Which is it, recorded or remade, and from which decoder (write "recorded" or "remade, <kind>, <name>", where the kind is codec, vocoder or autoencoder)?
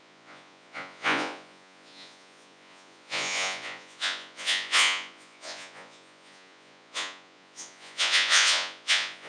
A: remade, vocoder, Vocos